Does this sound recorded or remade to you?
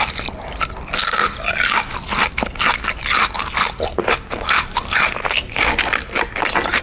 recorded